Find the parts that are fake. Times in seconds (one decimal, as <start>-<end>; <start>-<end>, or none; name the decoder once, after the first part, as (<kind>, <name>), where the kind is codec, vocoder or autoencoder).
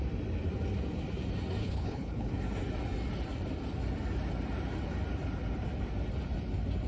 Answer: 1.6-2.3 (codec, HILCodec)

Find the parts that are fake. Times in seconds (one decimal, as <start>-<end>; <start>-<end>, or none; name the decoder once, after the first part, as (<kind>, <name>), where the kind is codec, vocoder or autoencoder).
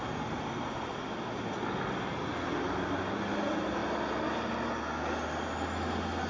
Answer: none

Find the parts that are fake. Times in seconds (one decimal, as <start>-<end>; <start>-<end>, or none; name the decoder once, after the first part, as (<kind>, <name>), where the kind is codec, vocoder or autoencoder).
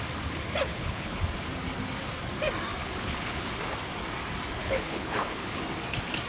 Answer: 0.7-1.2 (codec, HILCodec); 2.8-3.5; 4.6-5.6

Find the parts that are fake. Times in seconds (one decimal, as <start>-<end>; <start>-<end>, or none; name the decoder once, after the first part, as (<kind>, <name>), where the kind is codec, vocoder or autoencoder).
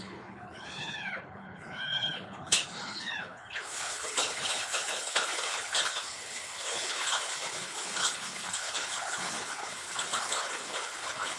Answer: 0.0-11.4 (codec, HILCodec)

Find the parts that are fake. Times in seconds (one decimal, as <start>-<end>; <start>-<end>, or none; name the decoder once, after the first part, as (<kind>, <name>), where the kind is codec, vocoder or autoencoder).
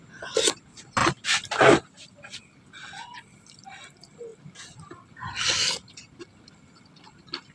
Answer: none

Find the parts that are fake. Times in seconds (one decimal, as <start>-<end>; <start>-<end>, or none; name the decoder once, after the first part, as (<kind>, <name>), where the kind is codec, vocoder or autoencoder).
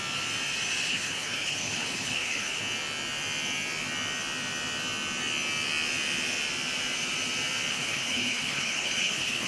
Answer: 0.9-2.6 (codec, HILCodec); 7.7-9.5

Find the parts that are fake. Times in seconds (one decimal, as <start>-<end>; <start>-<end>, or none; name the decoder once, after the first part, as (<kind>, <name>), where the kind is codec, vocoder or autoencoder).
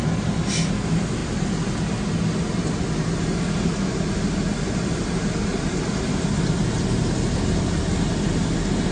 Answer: none